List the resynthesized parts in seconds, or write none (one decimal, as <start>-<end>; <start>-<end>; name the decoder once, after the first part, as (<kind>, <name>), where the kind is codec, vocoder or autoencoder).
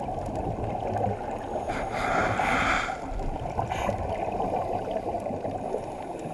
2.2-3.0 (vocoder, BigVGAN v2)